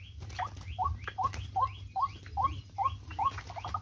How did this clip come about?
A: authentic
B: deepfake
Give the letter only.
A